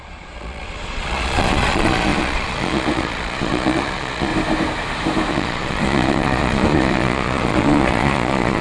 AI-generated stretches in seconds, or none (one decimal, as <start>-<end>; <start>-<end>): 0.0-4.3; 5.3-8.6